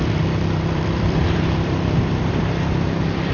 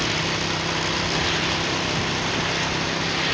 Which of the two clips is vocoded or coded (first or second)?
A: first